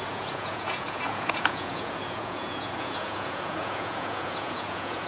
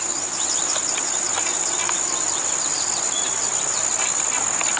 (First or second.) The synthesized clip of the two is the first